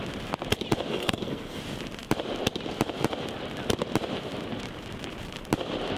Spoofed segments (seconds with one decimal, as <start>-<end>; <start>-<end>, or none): 0.9-1.6